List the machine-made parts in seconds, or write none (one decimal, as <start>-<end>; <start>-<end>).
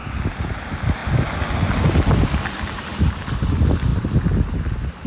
none